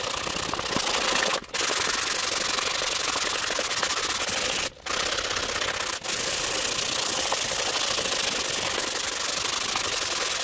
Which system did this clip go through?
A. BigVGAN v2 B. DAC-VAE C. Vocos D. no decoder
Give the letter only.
D